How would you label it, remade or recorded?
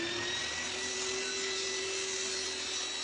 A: recorded